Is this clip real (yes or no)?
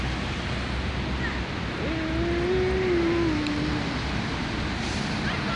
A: yes